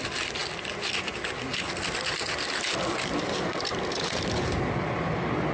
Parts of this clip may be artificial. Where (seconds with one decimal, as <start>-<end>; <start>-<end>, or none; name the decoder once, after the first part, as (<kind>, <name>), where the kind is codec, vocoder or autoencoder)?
none